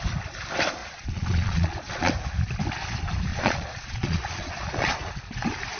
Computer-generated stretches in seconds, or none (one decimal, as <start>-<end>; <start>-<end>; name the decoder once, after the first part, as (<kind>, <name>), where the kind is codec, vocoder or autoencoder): 0.8-2.1 (vocoder, Vocos); 3.3-5.1

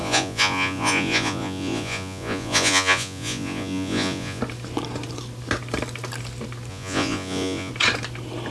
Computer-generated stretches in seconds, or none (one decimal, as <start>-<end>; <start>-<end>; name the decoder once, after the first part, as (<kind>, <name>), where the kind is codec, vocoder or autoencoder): 0.0-4.4 (vocoder, Vocos); 6.7-7.7